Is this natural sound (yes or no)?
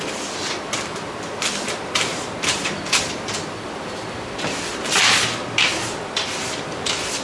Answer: no